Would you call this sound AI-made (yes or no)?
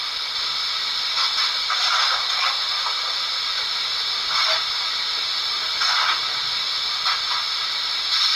no